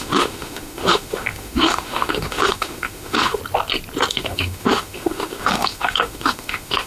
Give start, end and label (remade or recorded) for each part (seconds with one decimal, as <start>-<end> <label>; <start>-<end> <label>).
0.0-3.4 remade; 3.4-4.1 recorded; 4.1-6.9 remade